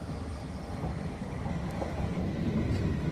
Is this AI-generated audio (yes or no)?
no